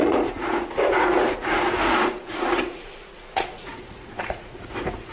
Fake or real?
fake